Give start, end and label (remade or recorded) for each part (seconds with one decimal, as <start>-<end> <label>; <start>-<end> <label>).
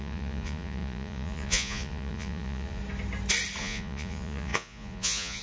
0.0-2.8 remade; 2.8-3.6 recorded; 3.6-5.4 remade